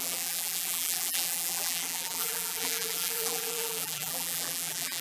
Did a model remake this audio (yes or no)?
yes